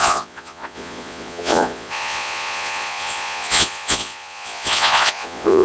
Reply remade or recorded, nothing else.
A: remade